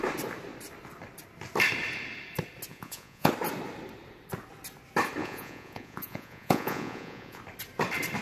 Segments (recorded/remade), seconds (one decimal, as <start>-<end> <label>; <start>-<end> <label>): 0.0-2.7 recorded; 2.7-3.3 remade; 3.3-5.2 recorded; 5.2-7.4 remade; 7.4-8.2 recorded